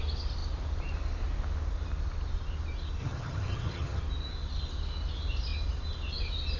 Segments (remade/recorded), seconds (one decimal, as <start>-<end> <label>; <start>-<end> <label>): 0.0-3.0 recorded; 3.0-4.0 remade; 4.0-6.6 recorded